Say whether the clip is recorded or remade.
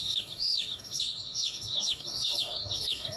remade